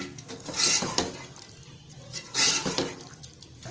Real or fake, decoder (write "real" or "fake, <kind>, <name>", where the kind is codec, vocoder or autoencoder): real